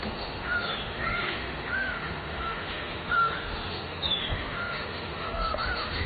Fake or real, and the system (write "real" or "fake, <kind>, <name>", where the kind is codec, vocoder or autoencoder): fake, autoencoder, DAC-VAE